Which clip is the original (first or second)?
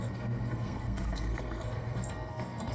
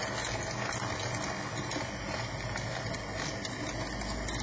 second